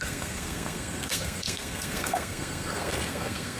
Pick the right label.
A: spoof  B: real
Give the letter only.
A